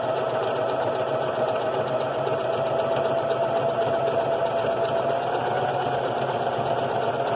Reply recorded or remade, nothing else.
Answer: recorded